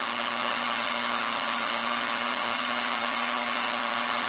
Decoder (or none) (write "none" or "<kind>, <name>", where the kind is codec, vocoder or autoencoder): vocoder, HiFi-GAN